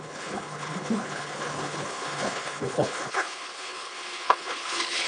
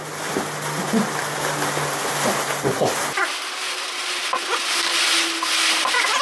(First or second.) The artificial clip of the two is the first